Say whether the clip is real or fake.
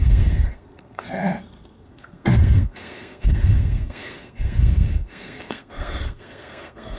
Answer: fake